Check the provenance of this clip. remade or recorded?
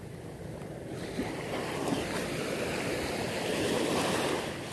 recorded